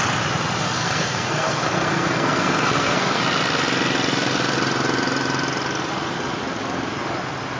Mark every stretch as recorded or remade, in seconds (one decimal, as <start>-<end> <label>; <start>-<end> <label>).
0.0-0.6 recorded; 0.6-3.2 remade; 3.2-7.6 recorded